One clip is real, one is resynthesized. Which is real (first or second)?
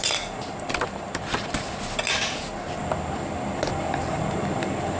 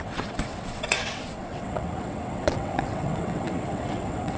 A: first